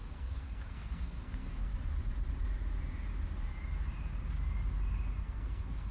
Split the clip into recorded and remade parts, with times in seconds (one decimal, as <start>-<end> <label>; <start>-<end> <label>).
0.0-1.7 remade; 1.7-5.2 recorded; 5.2-5.9 remade

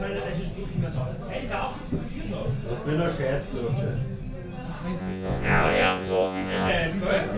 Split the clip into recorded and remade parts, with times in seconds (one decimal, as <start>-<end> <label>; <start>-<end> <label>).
0.0-5.0 recorded; 5.0-6.7 remade; 6.7-7.4 recorded

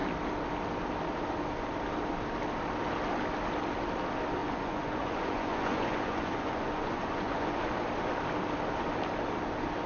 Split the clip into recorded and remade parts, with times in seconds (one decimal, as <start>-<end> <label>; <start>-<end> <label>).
0.0-4.4 recorded; 4.4-7.6 remade; 7.6-9.9 recorded

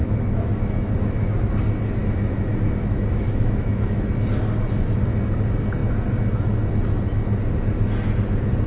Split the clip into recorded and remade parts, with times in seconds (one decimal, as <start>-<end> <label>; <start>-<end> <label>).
0.0-1.5 remade; 1.5-2.0 recorded; 2.0-4.1 remade; 4.1-8.7 recorded

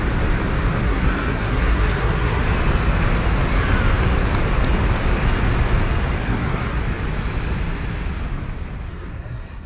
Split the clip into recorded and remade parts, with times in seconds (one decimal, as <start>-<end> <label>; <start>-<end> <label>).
0.0-0.8 recorded; 0.8-2.4 remade; 2.4-6.2 recorded; 6.2-6.8 remade; 6.8-8.9 recorded; 8.9-9.7 remade